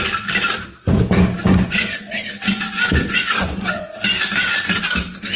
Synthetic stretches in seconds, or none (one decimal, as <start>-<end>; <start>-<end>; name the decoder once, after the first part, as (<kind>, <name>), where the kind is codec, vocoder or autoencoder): 1.4-3.9 (vocoder, Vocos)